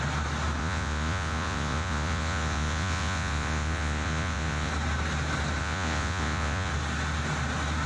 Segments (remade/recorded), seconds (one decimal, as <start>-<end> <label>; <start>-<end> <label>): 0.0-0.6 recorded; 0.6-4.7 remade; 4.7-5.6 recorded; 5.6-6.7 remade; 6.7-7.9 recorded